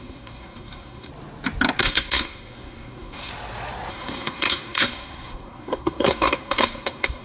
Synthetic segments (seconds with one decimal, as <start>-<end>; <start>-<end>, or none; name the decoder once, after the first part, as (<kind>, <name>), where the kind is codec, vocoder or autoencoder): 0.0-1.1 (codec, SNAC); 1.8-3.3; 3.9-7.2